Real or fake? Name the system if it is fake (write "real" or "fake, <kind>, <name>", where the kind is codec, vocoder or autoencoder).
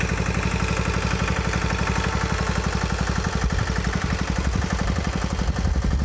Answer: real